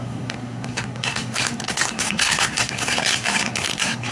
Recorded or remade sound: remade